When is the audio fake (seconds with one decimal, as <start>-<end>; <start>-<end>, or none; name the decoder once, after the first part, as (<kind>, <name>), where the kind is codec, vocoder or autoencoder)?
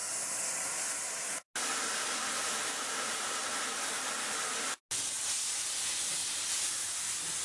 none